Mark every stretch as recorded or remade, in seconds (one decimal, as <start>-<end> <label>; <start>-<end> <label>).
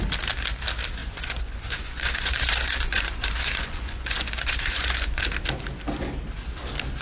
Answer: 0.0-1.0 recorded; 1.0-5.2 remade; 5.2-7.0 recorded